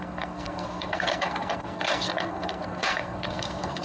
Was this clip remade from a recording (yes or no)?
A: yes